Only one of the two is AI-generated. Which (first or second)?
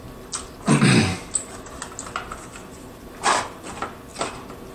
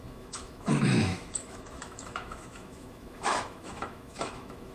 second